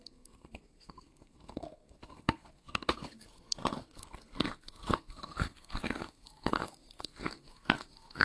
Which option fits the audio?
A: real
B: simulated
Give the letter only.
B